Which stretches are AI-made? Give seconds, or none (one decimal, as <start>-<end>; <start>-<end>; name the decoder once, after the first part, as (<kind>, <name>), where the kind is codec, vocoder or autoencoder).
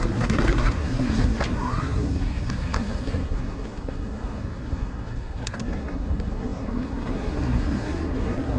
0.0-8.6 (codec, SNAC)